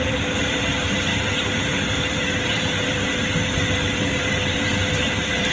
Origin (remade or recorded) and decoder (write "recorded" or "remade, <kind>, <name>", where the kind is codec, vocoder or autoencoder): remade, vocoder, BigVGAN v2